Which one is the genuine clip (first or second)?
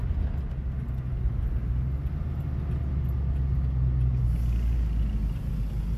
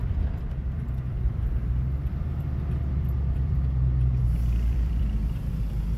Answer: first